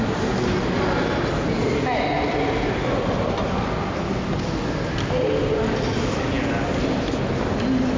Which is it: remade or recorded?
recorded